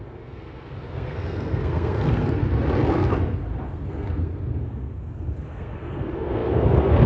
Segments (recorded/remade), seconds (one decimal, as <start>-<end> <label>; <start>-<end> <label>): 0.0-2.4 remade; 2.4-2.9 recorded; 2.9-7.1 remade